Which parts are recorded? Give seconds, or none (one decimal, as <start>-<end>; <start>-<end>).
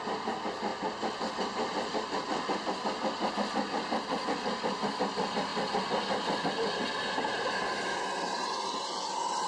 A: 0.0-9.5